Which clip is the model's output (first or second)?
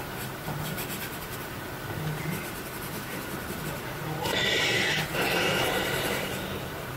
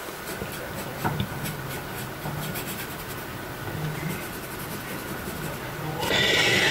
first